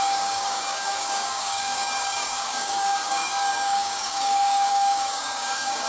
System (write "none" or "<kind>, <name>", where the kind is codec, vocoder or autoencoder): codec, DAC